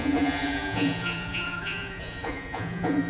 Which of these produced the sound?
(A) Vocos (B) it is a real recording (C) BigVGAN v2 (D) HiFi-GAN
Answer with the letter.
A